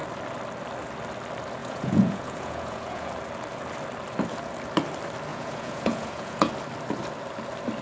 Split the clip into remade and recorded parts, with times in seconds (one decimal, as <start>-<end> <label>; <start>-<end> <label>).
0.0-1.6 recorded; 1.6-3.1 remade; 3.1-5.3 recorded; 5.3-6.5 remade; 6.5-7.8 recorded

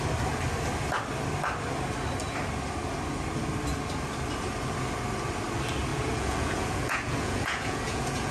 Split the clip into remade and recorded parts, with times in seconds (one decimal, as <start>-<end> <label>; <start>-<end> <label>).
0.0-5.9 recorded; 5.9-8.3 remade

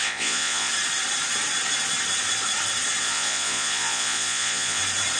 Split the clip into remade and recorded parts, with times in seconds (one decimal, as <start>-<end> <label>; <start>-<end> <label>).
0.0-0.7 remade; 0.7-3.0 recorded; 3.0-4.8 remade; 4.8-5.2 recorded

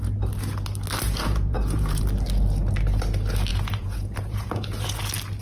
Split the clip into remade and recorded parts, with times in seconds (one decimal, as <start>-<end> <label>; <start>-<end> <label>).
0.0-1.2 recorded; 1.2-2.0 remade; 2.0-3.5 recorded; 3.5-5.0 remade; 5.0-5.4 recorded

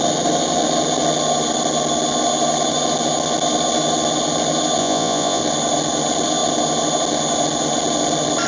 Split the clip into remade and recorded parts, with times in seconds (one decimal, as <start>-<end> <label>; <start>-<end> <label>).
0.0-4.8 recorded; 4.8-5.4 remade; 5.4-8.5 recorded

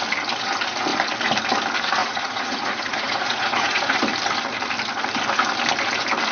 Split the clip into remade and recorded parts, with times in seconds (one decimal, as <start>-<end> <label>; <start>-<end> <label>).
0.0-2.0 recorded; 2.0-4.0 remade; 4.0-6.3 recorded

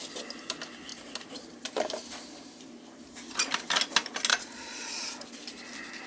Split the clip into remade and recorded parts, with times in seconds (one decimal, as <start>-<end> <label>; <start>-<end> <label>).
0.0-4.3 recorded; 4.3-5.1 remade; 5.1-6.1 recorded

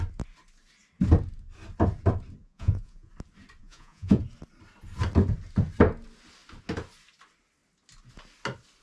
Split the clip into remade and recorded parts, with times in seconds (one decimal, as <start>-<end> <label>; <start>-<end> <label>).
0.0-2.4 recorded; 2.4-3.1 remade; 3.1-3.6 recorded; 3.6-4.2 remade; 4.2-8.8 recorded